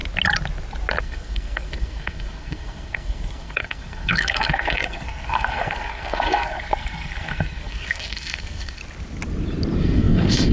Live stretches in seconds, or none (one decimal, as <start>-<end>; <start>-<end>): 0.0-1.0; 8.8-9.8